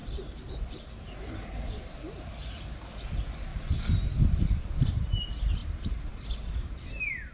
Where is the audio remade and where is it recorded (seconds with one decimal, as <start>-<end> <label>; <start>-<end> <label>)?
0.0-2.9 remade; 2.9-3.5 recorded; 3.5-4.9 remade; 4.9-5.6 recorded; 5.6-7.3 remade